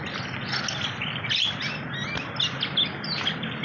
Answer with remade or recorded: recorded